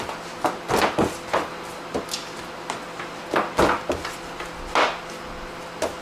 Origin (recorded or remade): recorded